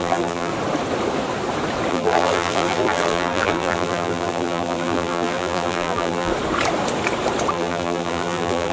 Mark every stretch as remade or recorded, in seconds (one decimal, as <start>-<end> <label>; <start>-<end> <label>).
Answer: 0.0-0.5 remade; 0.5-1.9 recorded; 1.9-6.3 remade; 6.3-7.5 recorded; 7.5-8.7 remade